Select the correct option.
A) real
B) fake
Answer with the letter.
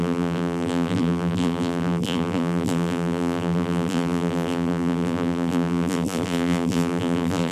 B